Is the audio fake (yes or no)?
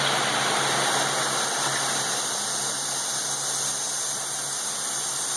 no